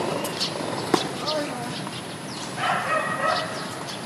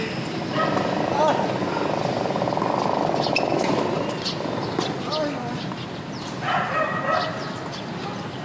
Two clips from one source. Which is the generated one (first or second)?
first